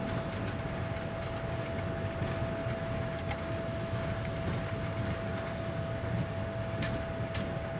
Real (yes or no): yes